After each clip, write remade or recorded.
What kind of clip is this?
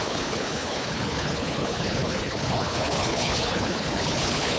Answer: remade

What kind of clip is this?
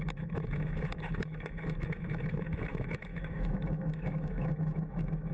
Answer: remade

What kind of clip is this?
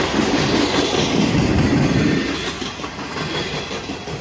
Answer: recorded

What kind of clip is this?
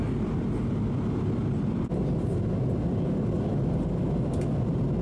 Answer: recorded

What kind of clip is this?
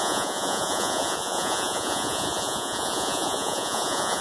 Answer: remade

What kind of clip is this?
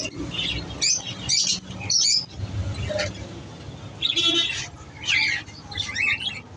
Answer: recorded